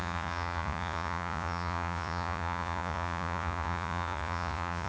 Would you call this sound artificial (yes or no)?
yes